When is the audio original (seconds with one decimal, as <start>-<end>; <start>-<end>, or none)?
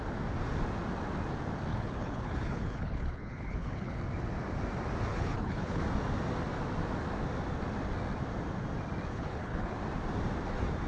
0.0-1.7; 4.0-5.1; 5.8-9.1; 9.8-10.9